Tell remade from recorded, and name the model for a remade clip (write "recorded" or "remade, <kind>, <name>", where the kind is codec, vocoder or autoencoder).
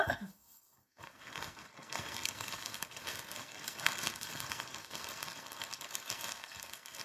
remade, codec, SNAC